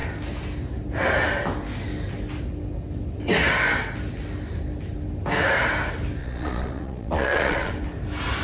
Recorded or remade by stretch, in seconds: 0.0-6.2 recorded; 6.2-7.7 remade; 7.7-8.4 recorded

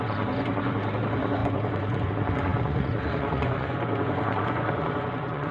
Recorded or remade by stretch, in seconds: 0.0-5.5 remade

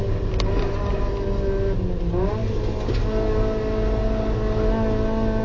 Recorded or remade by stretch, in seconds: 0.0-5.4 recorded

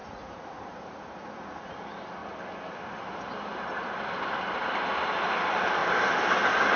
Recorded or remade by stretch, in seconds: 0.0-1.7 remade; 1.7-6.8 recorded